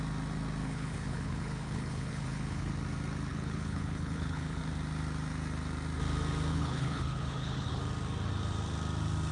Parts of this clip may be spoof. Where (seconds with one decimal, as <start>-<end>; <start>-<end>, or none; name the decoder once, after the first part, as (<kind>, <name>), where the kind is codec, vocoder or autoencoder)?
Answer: 0.6-2.7 (codec, HILCodec); 3.3-4.6; 6.5-7.8